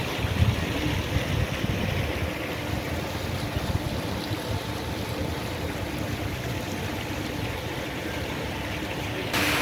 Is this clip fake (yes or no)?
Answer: no